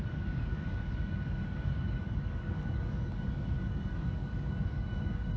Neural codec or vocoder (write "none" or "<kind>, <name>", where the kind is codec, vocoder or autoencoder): codec, DAC